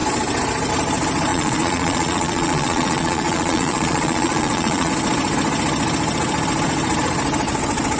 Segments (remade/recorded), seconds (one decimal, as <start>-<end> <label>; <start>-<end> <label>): 0.0-1.3 recorded; 1.3-4.9 remade; 4.9-8.0 recorded